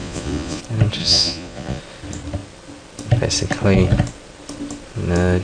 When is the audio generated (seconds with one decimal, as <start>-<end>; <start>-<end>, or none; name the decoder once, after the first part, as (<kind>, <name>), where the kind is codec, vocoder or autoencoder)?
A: 0.0-0.6 (vocoder, Vocos); 1.0-1.8